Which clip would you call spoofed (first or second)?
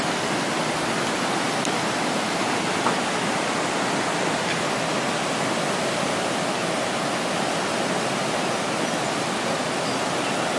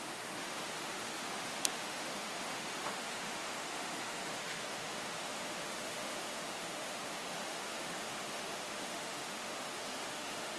second